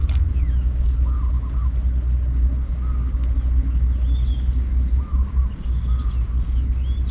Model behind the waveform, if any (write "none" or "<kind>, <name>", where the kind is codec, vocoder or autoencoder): none